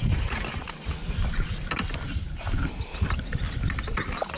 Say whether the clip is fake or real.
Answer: real